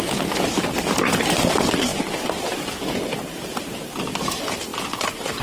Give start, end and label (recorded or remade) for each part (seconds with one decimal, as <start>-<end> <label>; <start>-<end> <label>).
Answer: 0.0-5.4 recorded